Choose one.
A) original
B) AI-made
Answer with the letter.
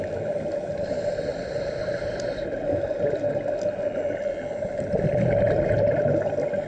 A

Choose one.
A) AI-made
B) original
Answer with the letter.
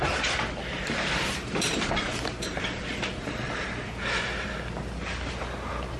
B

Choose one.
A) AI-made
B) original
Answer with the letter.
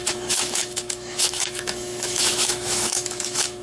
A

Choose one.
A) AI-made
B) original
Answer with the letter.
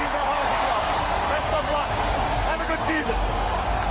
A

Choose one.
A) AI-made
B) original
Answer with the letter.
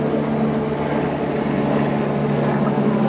B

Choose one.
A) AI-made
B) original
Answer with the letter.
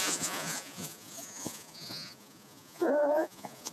A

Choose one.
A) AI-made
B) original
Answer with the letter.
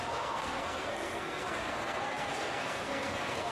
A